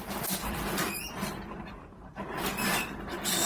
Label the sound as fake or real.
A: fake